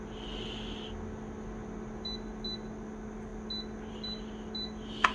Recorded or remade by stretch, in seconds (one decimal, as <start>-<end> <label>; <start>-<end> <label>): 0.0-5.1 recorded